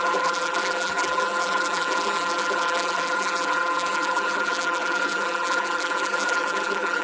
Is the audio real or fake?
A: fake